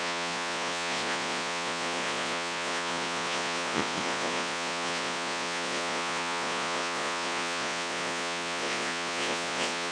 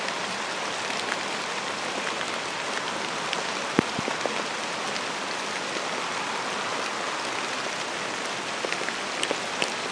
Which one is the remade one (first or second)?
first